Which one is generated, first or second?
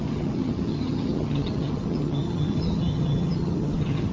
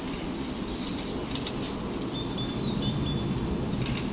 first